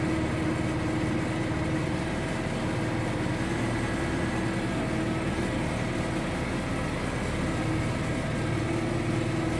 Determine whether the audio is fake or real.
real